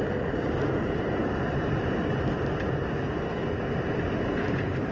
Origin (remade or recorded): recorded